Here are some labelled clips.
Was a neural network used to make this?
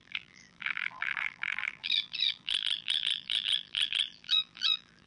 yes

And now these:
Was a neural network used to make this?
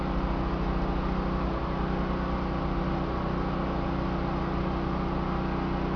no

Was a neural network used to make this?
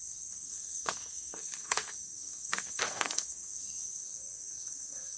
yes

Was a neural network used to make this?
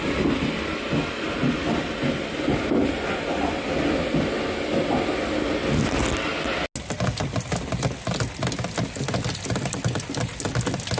no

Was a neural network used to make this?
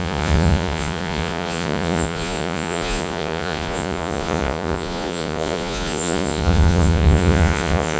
yes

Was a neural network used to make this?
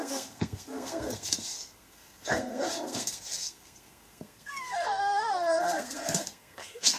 yes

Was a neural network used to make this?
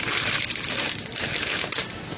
yes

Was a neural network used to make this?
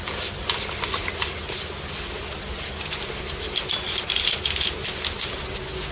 no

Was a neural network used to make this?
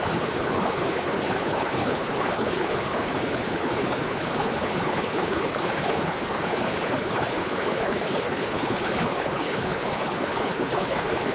yes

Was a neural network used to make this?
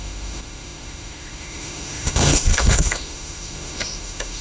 yes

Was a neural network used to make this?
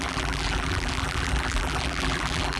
yes